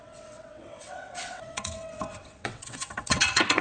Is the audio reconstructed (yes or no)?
yes